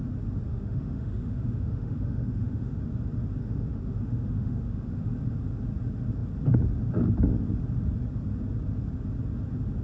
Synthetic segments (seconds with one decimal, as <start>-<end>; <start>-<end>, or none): 0.5-2.8; 3.4-5.1